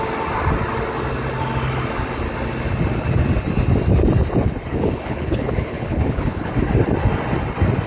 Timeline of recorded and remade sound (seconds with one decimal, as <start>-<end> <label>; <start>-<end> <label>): 0.0-4.7 recorded; 4.7-6.5 remade; 6.5-7.9 recorded